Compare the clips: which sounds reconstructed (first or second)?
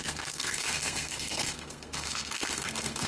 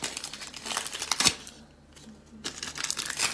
first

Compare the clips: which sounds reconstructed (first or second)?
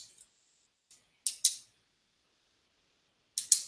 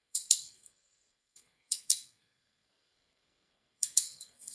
second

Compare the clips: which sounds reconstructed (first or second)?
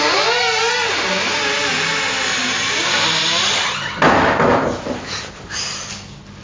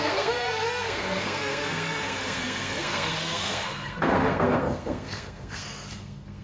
second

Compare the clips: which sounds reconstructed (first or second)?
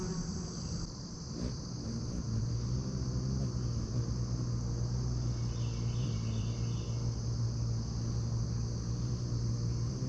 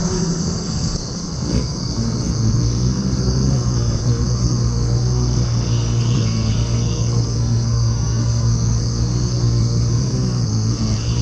second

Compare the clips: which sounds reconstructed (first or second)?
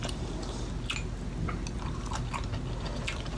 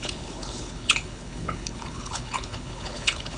second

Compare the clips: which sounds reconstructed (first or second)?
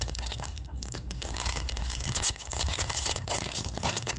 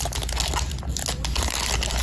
first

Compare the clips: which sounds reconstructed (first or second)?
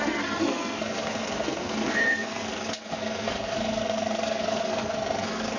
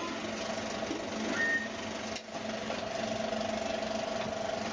first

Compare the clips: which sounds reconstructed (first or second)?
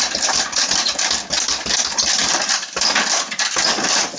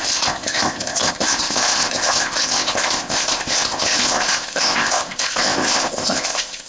second